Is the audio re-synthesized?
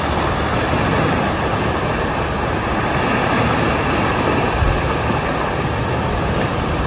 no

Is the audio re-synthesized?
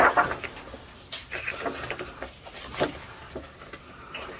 no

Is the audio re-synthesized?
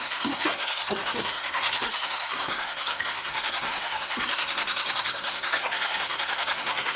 yes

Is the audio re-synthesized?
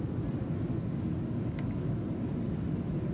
no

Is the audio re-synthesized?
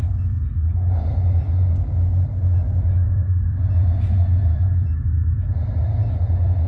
no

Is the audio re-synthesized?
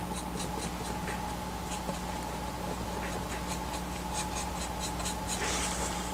no